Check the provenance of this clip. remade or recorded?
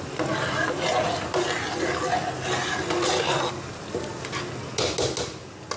recorded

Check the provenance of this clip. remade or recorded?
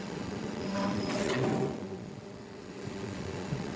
remade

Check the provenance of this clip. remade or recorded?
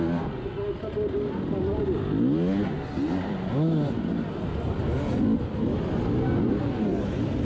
recorded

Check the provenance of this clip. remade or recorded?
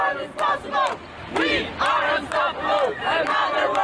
recorded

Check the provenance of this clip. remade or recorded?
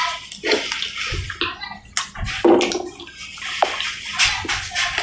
recorded